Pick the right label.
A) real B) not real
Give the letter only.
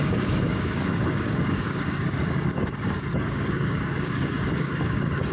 B